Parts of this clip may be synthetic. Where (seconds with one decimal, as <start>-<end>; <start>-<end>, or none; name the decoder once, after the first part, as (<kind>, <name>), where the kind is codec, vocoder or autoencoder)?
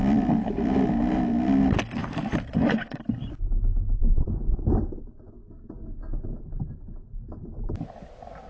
none